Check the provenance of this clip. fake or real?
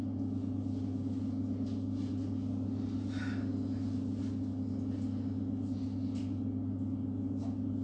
real